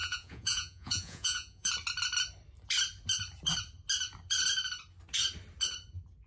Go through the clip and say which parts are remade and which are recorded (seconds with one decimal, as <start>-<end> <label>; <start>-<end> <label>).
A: 0.0-1.7 remade; 1.7-6.3 recorded